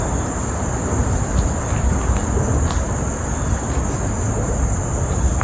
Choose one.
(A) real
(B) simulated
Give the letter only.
A